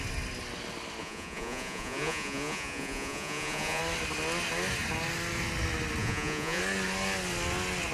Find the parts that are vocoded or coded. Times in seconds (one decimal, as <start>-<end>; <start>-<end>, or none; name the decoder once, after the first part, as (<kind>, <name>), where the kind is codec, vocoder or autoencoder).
1.0-3.8 (vocoder, Vocos); 6.0-6.6